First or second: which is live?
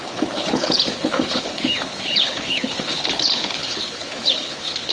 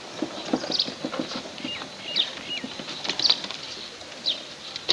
second